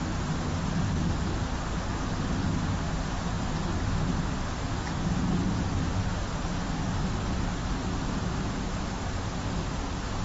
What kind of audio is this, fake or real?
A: real